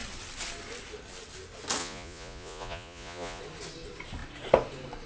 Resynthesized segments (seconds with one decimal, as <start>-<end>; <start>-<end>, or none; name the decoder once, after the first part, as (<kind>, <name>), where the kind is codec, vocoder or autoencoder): 1.8-3.4 (vocoder, Vocos)